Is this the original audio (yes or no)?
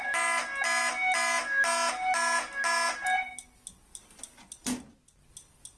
yes